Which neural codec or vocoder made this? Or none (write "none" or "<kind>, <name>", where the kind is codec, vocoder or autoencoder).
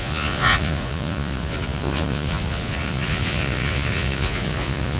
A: vocoder, Vocos